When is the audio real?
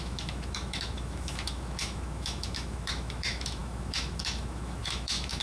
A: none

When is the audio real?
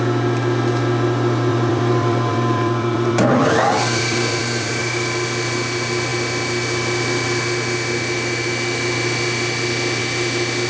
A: 0.0-1.5; 4.8-10.7